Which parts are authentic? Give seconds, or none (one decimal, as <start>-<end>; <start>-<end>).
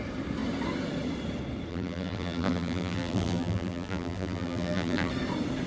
0.0-1.7; 5.1-5.7